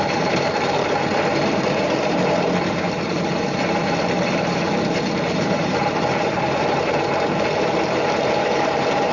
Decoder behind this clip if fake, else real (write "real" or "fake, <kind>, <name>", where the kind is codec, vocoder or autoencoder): fake, vocoder, BigVGAN v2